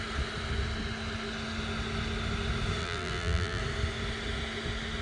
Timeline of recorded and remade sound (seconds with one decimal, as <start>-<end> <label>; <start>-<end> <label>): 0.0-2.8 recorded; 2.8-3.6 remade; 3.6-5.0 recorded